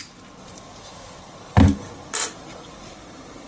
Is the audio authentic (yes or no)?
yes